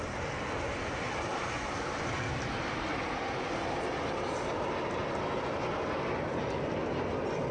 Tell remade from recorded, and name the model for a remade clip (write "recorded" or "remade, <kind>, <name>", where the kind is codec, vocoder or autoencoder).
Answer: recorded